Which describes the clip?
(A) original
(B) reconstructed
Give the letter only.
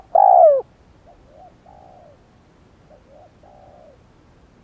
A